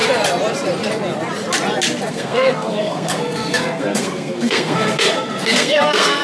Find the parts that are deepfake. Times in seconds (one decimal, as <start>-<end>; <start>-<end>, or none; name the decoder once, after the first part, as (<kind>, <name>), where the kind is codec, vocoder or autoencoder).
2.1-6.2 (codec, SNAC)